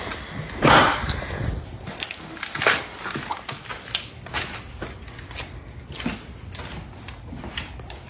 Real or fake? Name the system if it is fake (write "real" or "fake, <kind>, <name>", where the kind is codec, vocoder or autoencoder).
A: real